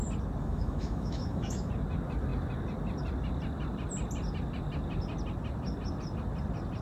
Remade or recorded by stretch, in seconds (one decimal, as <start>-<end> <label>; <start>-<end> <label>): 0.0-0.4 recorded; 0.4-1.7 remade; 1.7-6.8 recorded